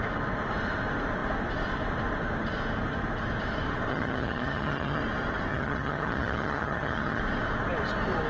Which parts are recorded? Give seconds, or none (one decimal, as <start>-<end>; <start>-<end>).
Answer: 0.0-3.9; 5.0-5.5; 7.2-8.3